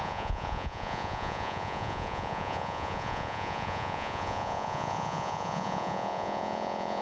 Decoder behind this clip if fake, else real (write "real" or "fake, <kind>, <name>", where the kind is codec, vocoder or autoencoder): fake, vocoder, Vocos